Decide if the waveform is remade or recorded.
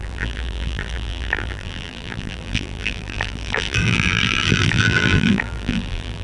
remade